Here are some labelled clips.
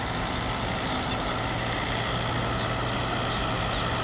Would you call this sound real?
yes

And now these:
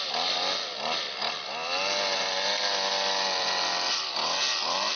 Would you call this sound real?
yes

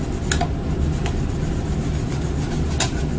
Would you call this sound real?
yes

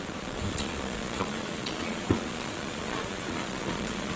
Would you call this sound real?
no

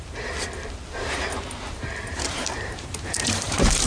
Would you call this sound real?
no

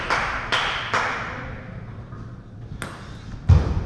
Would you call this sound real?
yes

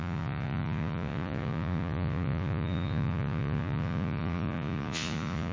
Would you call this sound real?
no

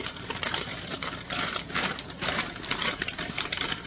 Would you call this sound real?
no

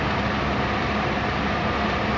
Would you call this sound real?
yes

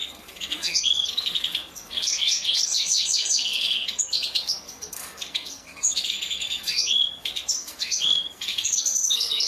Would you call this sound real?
no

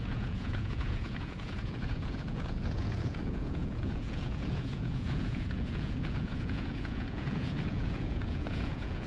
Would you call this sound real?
no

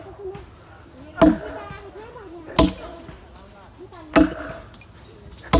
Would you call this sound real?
yes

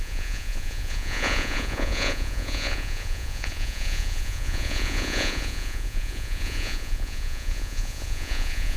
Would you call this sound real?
no